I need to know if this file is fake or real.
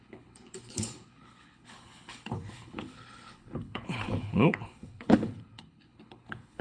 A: fake